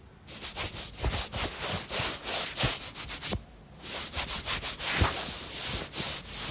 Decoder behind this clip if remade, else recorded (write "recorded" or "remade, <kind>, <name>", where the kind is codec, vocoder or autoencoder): recorded